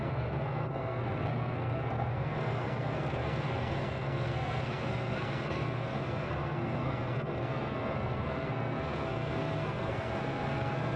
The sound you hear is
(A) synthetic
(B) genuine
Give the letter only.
A